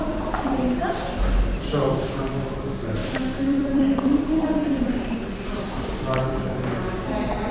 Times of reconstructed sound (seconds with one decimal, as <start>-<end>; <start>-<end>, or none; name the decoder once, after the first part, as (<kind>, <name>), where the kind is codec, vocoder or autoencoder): 3.0-5.7 (vocoder, BigVGAN v2)